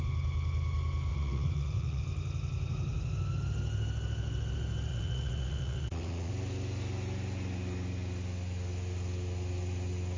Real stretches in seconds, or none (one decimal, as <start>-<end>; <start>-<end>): 0.0-1.1; 2.0-4.9; 6.3-10.2